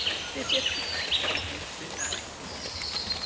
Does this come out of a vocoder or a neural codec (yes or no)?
no